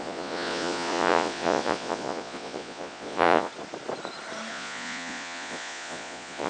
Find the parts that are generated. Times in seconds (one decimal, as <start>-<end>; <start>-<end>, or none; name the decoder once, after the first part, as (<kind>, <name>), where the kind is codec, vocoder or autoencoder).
0.0-3.5 (vocoder, Vocos); 4.5-6.5